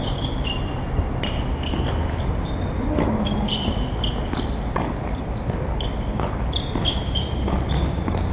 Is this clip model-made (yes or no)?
no